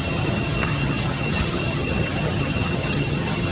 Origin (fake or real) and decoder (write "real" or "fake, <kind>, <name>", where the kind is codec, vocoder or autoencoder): fake, vocoder, HiFi-GAN